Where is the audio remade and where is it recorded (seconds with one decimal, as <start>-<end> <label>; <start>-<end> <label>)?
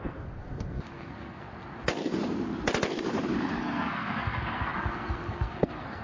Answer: 0.0-1.5 remade; 1.5-3.6 recorded; 3.6-6.0 remade